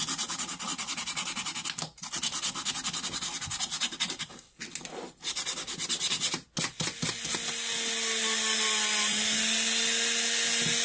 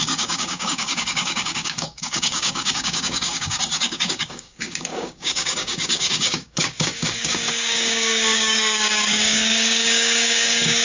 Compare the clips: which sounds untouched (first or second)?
first